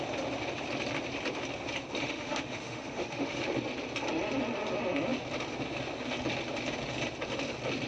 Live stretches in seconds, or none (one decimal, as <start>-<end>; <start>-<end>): 0.0-2.0; 3.4-7.9